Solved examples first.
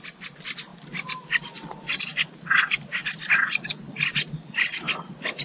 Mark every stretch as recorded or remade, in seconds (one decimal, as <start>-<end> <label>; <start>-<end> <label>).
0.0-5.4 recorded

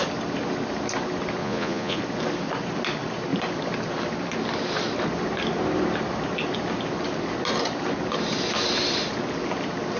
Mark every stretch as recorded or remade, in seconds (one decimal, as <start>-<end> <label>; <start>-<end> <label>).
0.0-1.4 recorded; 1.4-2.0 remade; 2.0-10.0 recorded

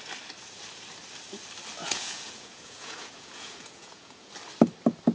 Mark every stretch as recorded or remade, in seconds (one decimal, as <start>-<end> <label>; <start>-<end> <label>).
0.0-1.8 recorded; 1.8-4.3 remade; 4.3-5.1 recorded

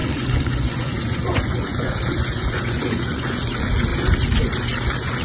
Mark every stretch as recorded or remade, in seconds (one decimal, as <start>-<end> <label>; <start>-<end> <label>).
0.0-3.9 remade; 3.9-4.4 recorded; 4.4-5.2 remade